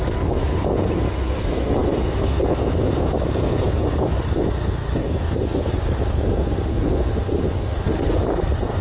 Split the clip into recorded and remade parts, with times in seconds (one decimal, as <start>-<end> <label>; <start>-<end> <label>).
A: 0.0-8.8 recorded